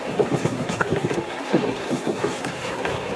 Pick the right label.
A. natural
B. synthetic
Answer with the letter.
B